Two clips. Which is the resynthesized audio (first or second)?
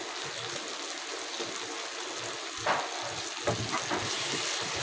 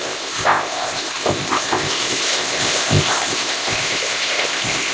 second